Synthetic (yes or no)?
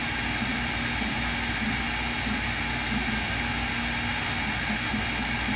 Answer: no